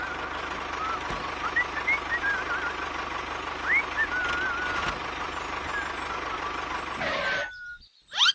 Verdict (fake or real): real